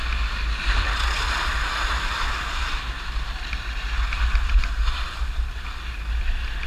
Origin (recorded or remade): recorded